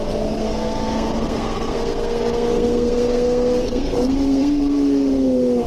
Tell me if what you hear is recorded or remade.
remade